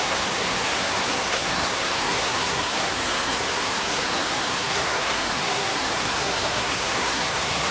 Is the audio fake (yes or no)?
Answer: yes